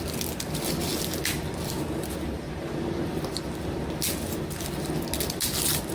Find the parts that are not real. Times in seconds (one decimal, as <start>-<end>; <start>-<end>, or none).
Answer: none